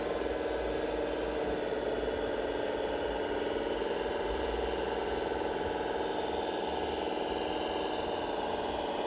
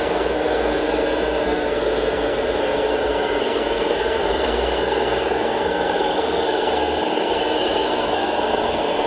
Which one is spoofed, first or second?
second